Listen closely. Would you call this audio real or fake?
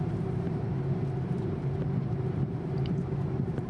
fake